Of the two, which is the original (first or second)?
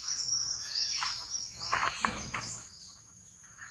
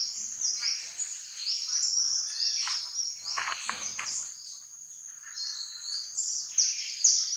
second